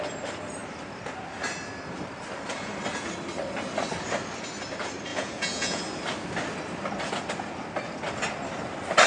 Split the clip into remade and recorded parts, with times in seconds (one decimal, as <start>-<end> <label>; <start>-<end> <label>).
0.0-5.1 recorded; 5.1-5.8 remade; 5.8-9.1 recorded